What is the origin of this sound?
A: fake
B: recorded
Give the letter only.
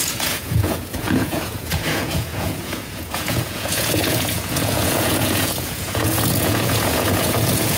A